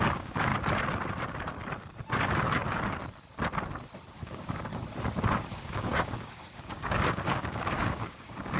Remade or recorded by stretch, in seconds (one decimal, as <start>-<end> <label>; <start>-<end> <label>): 0.0-0.5 remade; 0.5-4.1 recorded; 4.1-4.7 remade; 4.7-5.5 recorded; 5.5-8.6 remade

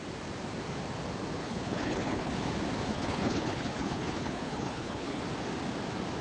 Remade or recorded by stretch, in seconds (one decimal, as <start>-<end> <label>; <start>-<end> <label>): 0.0-1.4 recorded; 1.4-2.3 remade; 2.3-2.9 recorded; 2.9-5.2 remade; 5.2-6.2 recorded